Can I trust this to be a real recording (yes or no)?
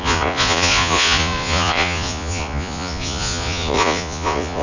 no